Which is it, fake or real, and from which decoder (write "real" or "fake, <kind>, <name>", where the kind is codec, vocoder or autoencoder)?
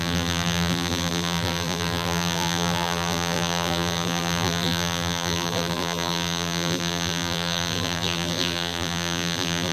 fake, vocoder, BigVGAN v2